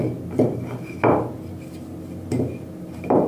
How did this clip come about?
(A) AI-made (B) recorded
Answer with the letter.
B